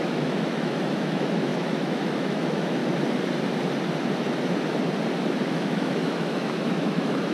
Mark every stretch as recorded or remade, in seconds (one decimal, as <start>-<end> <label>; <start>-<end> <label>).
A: 0.0-2.8 remade; 2.8-5.5 recorded; 5.5-7.3 remade